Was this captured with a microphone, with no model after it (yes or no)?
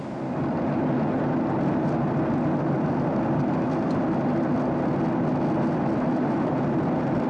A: yes